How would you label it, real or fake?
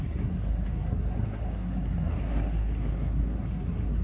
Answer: fake